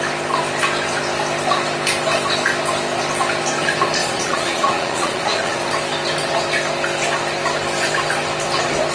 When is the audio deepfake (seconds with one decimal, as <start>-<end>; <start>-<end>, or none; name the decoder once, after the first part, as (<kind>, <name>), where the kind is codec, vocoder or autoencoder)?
4.0-5.6 (vocoder, Vocos)